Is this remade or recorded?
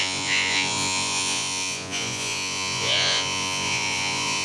remade